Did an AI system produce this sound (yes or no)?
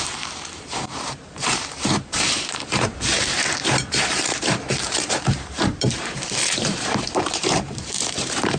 yes